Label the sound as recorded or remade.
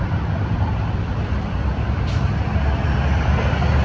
recorded